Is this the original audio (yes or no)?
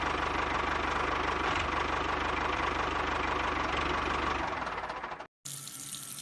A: yes